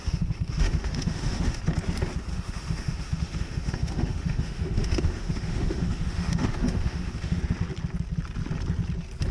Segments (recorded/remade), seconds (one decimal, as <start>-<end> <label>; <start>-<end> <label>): 0.0-1.6 remade; 1.6-2.3 recorded; 2.3-7.4 remade; 7.4-9.3 recorded